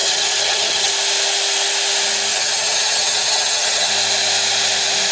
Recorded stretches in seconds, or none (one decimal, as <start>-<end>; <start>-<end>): 0.9-2.3; 3.9-5.1